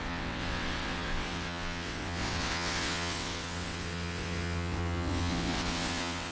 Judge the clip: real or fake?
fake